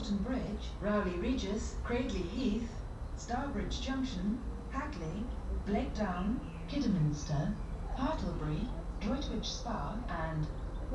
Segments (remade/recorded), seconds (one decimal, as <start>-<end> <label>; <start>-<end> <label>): 0.0-10.9 recorded

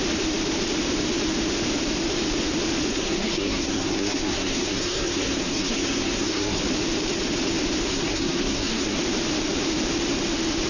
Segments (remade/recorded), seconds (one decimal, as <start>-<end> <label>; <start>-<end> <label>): 0.0-2.9 recorded; 2.9-6.6 remade; 6.6-7.9 recorded; 7.9-9.0 remade; 9.0-10.7 recorded

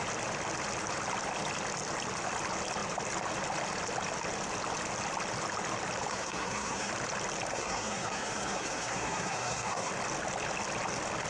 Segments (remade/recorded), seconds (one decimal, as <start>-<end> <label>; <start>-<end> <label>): 0.0-6.1 recorded; 6.1-6.9 remade; 6.9-7.5 recorded; 7.5-9.9 remade; 9.9-11.3 recorded

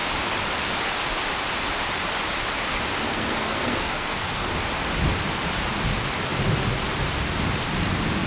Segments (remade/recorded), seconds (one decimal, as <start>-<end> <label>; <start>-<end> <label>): 0.0-3.1 recorded; 3.1-4.5 remade; 4.5-8.3 recorded